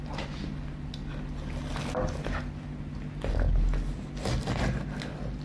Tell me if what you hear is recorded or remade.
recorded